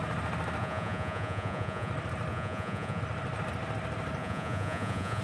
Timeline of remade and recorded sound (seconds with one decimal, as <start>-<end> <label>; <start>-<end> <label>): 0.0-0.6 recorded; 0.6-1.9 remade; 1.9-2.3 recorded; 2.3-3.0 remade; 3.0-4.2 recorded; 4.2-5.2 remade